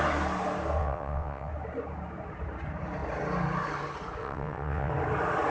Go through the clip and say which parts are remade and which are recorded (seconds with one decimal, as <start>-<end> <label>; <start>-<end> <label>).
0.0-0.8 recorded; 0.8-1.5 remade; 1.5-4.2 recorded; 4.2-4.9 remade; 4.9-5.5 recorded

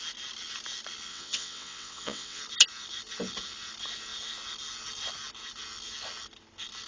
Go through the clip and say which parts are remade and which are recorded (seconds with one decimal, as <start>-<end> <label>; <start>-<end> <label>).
0.0-1.1 recorded; 1.1-2.4 remade; 2.4-6.9 recorded

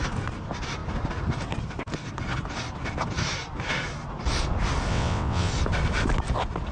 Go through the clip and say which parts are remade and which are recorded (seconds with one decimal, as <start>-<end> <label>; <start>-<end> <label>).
0.0-4.9 recorded; 4.9-5.5 remade; 5.5-6.7 recorded

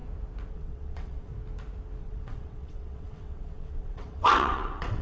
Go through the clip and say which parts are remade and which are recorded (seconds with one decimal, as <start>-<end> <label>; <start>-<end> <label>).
0.0-0.5 recorded; 0.5-1.3 remade; 1.3-2.0 recorded; 2.0-5.0 remade

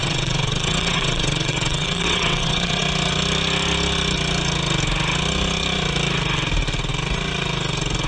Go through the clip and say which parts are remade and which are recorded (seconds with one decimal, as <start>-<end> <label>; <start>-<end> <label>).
0.0-2.8 remade; 2.8-8.1 recorded

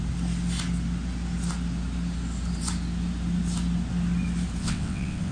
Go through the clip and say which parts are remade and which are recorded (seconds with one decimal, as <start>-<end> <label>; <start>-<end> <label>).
0.0-4.6 recorded; 4.6-5.3 remade